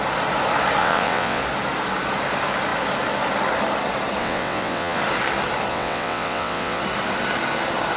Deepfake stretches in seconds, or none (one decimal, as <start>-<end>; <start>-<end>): 0.8-1.4; 4.2-5.0; 5.7-6.8